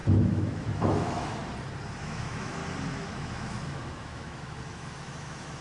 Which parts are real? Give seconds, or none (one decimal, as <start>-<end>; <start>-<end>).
1.4-2.0; 2.6-3.1